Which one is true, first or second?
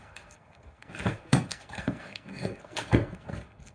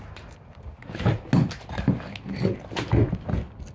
second